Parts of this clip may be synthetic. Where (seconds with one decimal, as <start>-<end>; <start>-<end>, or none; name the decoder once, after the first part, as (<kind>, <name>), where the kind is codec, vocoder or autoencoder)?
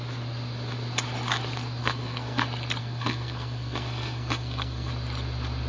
1.8-2.4 (codec, SNAC); 2.8-4.9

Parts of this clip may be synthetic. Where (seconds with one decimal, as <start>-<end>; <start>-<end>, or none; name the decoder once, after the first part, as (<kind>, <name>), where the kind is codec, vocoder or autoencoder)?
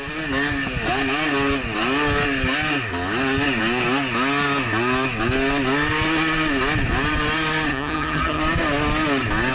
7.7-8.4 (vocoder, HiFi-GAN)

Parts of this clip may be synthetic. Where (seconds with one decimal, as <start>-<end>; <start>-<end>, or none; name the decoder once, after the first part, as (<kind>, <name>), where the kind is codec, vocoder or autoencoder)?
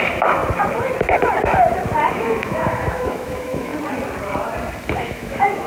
0.0-0.4 (autoencoder, DAC-VAE); 2.1-3.7; 4.8-5.7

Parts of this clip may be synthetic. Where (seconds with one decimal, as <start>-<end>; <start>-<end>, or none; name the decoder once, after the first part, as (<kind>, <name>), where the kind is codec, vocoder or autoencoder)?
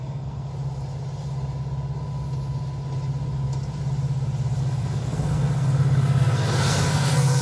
0.0-0.5 (codec, SNAC); 4.6-7.4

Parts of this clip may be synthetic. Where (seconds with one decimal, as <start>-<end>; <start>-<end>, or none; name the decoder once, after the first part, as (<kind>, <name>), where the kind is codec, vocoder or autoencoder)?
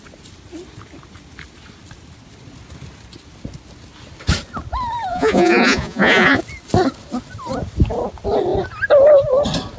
5.1-6.4 (vocoder, Vocos)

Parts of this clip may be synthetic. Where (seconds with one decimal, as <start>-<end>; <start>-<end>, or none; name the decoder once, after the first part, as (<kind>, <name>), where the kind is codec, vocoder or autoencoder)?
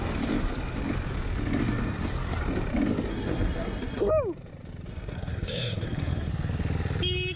3.1-4.1 (codec, SNAC); 4.9-6.3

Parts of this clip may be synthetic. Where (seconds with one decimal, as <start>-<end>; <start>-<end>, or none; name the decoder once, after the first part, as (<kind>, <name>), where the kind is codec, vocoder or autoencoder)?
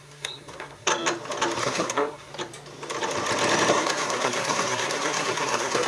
0.0-0.9 (codec, SNAC); 1.6-2.3; 3.7-5.9